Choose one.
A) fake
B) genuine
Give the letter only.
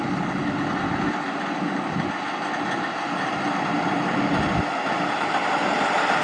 B